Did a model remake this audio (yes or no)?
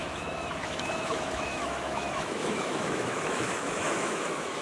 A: yes